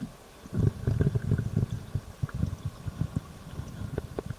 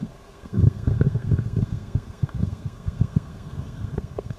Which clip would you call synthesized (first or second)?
second